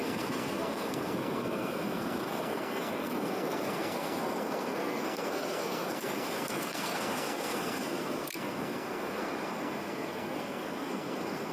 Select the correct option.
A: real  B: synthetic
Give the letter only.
B